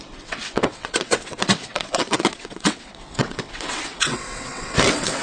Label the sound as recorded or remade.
remade